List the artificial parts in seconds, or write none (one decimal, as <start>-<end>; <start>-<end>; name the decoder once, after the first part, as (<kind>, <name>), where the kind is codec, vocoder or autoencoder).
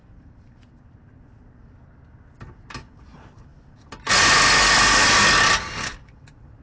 none